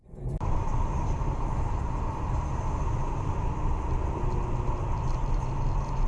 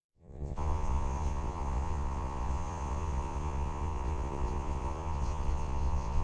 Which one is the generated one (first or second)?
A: second